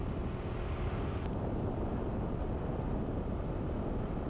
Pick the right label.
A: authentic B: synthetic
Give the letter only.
A